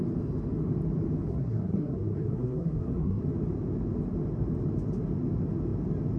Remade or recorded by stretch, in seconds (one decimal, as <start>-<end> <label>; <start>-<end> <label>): 0.0-1.3 recorded; 1.3-3.2 remade; 3.2-6.2 recorded